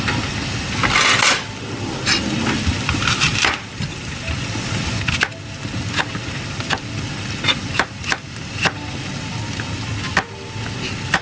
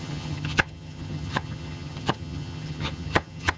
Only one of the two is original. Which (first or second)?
first